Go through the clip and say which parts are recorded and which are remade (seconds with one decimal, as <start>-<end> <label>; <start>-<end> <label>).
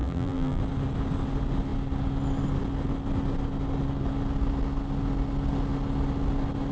0.0-0.6 remade; 0.6-6.7 recorded